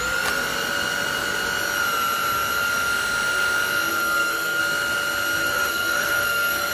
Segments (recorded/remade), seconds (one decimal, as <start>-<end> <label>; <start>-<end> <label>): 0.0-3.9 recorded; 3.9-4.6 remade; 4.6-5.4 recorded; 5.4-6.7 remade